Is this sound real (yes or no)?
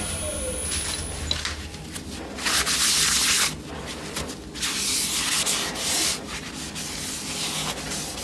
yes